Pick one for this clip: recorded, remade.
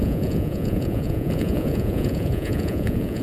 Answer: remade